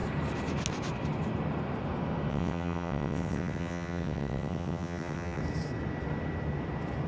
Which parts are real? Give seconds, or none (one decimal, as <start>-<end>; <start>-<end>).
0.0-2.3; 5.4-7.1

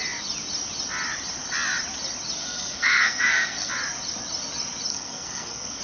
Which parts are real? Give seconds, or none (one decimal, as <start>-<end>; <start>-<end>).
0.0-2.4; 3.7-4.9

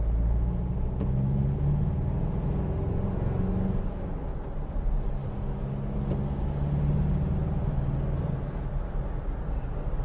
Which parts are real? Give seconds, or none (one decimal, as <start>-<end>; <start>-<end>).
0.0-10.0

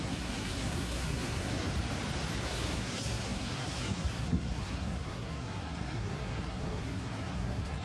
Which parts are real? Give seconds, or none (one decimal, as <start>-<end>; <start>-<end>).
1.7-2.4

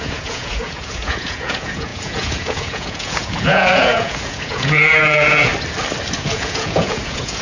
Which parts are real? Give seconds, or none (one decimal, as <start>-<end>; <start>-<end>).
5.5-6.2

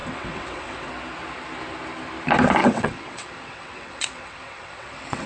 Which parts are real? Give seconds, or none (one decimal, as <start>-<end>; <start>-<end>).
0.9-2.6